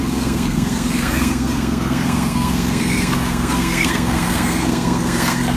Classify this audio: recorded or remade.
remade